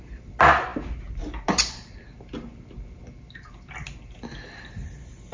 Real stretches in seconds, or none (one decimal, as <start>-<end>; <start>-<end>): 0.0-5.3